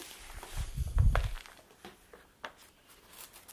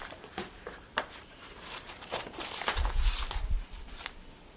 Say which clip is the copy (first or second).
second